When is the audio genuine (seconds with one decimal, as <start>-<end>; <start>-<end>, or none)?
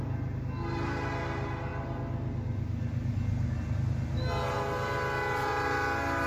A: 0.0-6.3